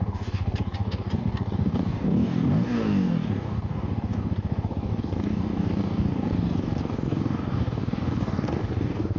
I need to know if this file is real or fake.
fake